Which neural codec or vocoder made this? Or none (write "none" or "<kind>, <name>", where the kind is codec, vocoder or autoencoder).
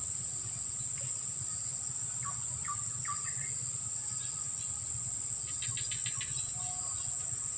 none